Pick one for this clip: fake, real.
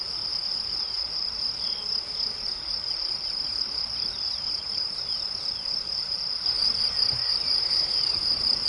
fake